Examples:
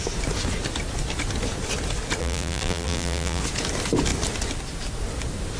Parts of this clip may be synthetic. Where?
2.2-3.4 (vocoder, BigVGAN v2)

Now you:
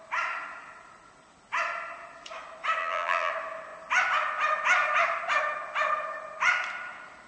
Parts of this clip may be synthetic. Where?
2.8-3.3 (vocoder, BigVGAN v2)